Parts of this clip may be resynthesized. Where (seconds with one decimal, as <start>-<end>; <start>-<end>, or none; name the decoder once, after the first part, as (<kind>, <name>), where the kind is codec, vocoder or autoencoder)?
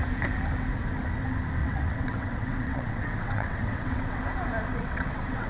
1.6-4.2 (vocoder, WaveNeXt); 4.7-5.5